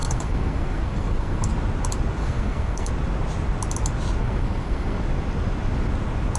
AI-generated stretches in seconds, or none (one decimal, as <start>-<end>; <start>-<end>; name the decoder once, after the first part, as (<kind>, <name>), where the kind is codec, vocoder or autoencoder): 0.0-1.5 (codec, SNAC); 2.2-2.9; 4.2-5.0